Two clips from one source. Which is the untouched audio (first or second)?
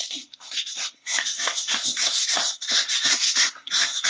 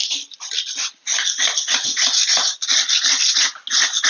second